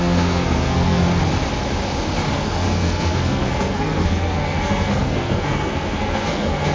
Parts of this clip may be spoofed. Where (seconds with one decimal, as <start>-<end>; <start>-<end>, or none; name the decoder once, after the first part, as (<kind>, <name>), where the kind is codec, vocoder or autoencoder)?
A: 0.0-1.0 (codec, SNAC); 2.3-6.7